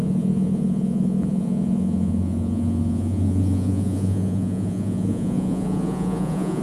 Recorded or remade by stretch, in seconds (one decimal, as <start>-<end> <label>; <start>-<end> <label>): 0.0-6.6 remade